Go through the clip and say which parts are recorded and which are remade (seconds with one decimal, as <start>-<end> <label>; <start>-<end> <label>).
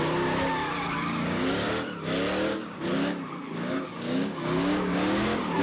0.0-0.6 recorded; 0.6-1.7 remade; 1.7-2.5 recorded; 2.5-5.6 remade